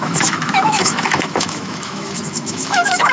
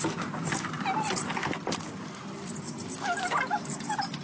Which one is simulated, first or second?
first